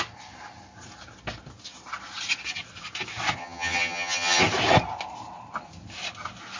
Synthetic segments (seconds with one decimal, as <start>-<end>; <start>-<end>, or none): 3.4-4.4